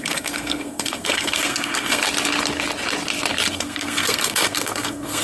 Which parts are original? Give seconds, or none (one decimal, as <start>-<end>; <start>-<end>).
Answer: 2.0-3.5